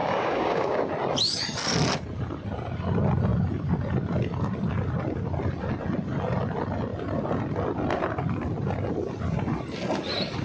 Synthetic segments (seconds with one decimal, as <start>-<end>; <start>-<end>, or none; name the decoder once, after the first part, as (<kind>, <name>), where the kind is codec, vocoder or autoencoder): 0.0-0.9 (codec, DAC)